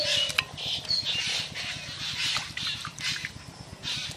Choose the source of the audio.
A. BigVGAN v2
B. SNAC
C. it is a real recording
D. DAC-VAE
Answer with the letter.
C